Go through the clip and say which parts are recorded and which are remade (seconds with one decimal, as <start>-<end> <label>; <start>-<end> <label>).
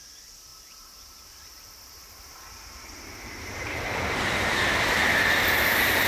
0.0-0.5 recorded; 0.5-4.2 remade; 4.2-6.1 recorded